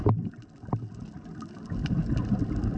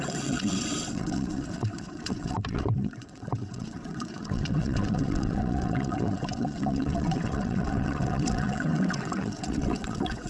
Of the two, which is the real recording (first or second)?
first